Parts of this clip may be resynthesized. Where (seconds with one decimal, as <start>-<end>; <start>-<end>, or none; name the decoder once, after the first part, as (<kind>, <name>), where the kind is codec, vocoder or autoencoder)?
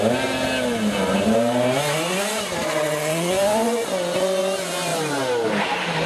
none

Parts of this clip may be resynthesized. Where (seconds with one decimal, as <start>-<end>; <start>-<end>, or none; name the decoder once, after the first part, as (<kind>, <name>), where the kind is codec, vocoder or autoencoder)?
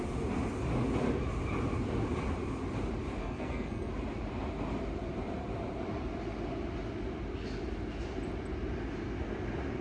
3.2-3.9 (codec, SNAC)